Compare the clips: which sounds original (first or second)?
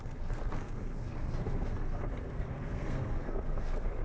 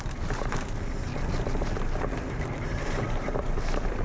second